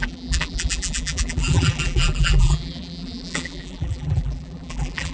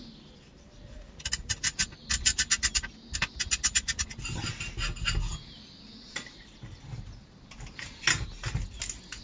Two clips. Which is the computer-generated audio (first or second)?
first